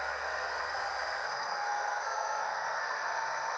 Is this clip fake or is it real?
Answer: fake